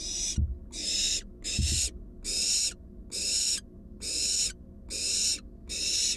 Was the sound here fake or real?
real